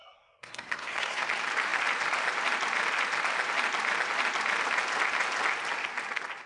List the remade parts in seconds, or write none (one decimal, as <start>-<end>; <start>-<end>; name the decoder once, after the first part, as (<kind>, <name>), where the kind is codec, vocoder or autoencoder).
0.0-1.2 (codec, SNAC)